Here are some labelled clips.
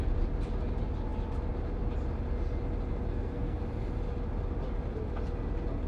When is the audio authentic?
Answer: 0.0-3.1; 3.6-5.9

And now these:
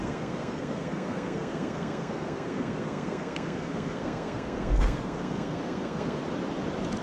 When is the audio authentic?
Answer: 6.2-7.0

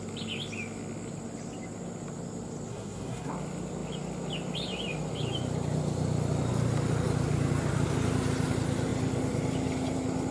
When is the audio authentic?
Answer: 0.0-2.7; 3.3-10.3

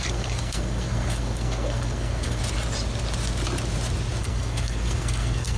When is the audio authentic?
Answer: 2.4-4.2

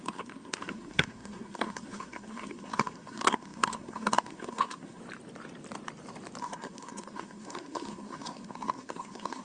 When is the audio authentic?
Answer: 5.0-6.4

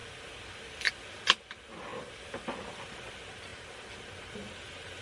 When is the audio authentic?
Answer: 0.0-5.0